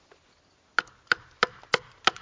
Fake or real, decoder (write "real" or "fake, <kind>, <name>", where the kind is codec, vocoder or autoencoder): real